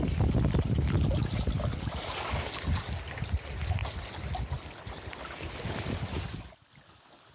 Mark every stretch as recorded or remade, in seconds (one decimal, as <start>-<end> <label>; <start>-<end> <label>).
0.0-7.3 recorded